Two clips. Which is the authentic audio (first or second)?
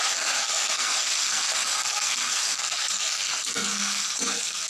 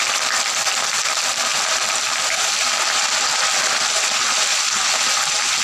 second